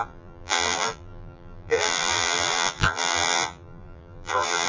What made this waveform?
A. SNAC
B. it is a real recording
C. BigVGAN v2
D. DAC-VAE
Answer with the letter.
C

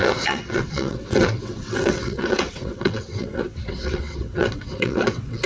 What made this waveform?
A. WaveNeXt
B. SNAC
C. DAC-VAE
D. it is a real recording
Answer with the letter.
A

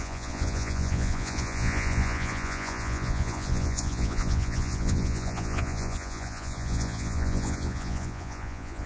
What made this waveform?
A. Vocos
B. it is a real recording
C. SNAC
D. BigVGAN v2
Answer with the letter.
A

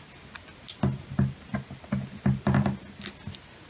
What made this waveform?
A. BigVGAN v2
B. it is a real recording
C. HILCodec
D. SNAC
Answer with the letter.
B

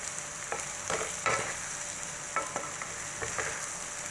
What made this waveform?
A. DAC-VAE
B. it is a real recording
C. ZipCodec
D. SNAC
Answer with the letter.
B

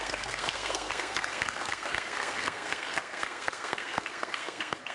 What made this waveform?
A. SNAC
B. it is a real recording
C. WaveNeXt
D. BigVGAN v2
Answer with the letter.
A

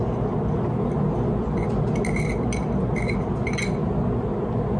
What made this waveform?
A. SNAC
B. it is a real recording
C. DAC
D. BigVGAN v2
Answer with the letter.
B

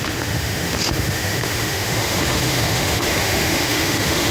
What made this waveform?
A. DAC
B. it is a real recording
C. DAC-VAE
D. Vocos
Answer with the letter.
C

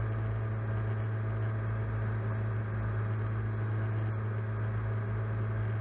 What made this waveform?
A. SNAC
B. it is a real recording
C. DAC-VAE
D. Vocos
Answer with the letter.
B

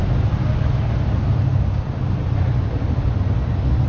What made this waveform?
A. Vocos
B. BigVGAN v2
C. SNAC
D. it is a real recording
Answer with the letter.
D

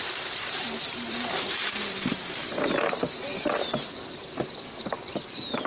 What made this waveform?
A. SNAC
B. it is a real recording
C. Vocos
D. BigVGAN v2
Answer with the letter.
D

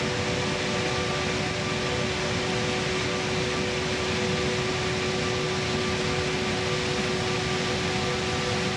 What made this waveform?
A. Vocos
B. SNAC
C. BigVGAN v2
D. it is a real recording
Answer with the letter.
D